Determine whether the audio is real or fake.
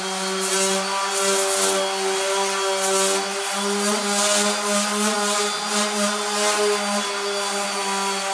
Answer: real